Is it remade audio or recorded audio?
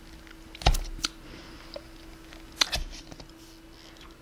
recorded